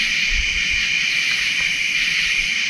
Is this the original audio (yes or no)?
yes